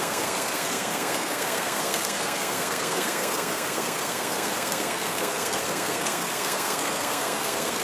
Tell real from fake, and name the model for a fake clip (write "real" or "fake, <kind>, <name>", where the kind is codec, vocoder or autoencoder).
fake, codec, SNAC